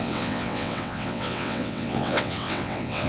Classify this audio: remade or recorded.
remade